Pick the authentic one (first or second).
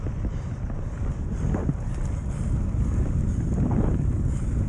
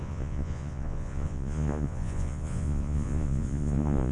first